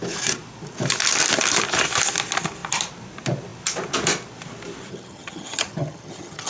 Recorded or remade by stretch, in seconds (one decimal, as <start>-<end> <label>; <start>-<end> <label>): 0.0-4.9 recorded; 4.9-6.5 remade